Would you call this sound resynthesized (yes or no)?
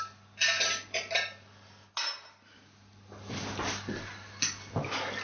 no